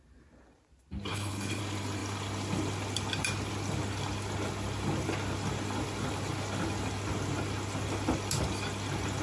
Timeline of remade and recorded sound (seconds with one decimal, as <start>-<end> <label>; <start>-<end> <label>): 0.0-1.1 recorded; 1.1-1.6 remade; 1.6-9.2 recorded